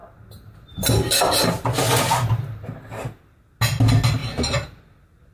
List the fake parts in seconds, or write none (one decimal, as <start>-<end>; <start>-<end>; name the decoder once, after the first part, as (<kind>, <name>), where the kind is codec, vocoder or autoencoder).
none